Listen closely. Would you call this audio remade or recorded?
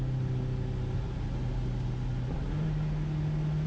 recorded